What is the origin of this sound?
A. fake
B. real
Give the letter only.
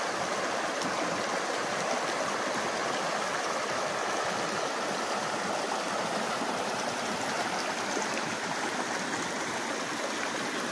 B